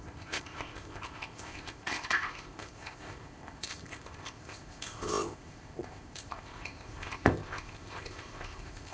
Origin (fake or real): fake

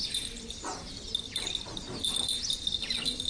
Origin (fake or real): real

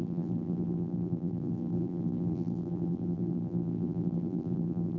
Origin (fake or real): fake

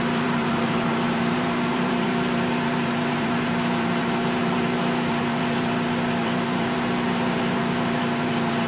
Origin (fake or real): fake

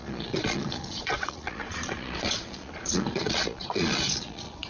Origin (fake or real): fake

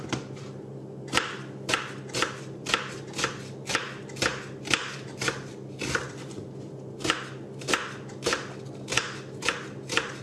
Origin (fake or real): real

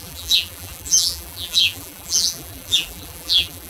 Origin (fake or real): fake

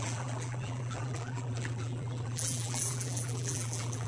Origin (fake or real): fake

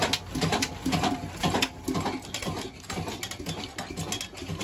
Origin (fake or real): real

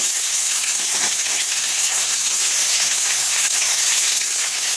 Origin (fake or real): fake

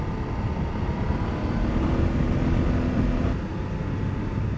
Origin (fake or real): real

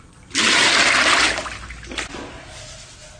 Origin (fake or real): real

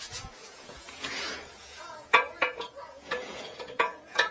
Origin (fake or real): fake